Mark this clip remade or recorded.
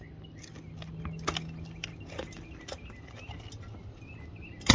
recorded